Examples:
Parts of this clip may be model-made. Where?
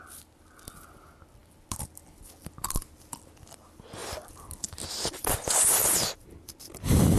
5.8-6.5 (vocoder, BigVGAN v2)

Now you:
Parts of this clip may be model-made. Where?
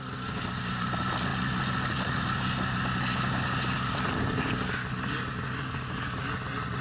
none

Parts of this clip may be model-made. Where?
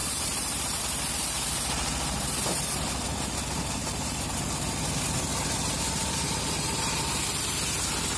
0.0-0.8 (vocoder, BigVGAN v2); 3.8-4.4; 5.3-7.2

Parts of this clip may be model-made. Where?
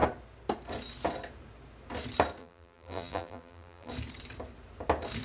2.4-3.9 (vocoder, BigVGAN v2)